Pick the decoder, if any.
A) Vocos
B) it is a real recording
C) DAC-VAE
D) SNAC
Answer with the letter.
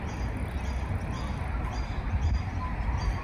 B